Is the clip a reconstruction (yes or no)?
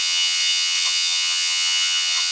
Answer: yes